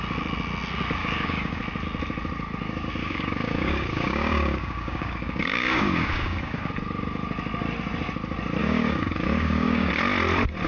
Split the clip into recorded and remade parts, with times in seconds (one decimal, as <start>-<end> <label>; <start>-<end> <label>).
0.0-1.0 recorded; 1.0-1.6 remade; 1.6-3.0 recorded; 3.0-6.7 remade; 6.7-8.6 recorded; 8.6-9.9 remade; 9.9-10.7 recorded